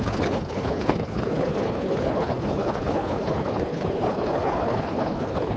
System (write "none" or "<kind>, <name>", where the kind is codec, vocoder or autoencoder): codec, HILCodec